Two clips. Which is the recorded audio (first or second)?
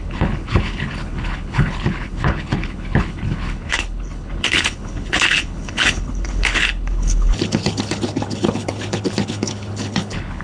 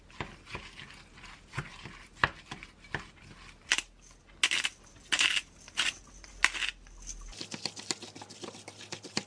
second